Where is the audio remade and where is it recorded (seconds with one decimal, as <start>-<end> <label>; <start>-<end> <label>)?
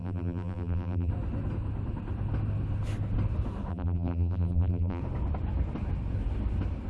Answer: 0.0-1.1 remade; 1.1-3.7 recorded; 3.7-5.0 remade; 5.0-6.9 recorded